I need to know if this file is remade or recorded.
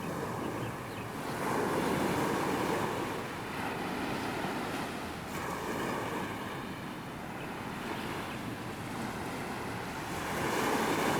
recorded